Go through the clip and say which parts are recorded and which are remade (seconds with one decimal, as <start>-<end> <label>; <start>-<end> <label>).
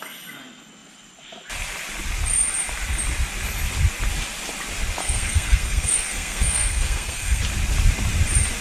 0.0-5.0 recorded; 5.0-7.4 remade; 7.4-8.6 recorded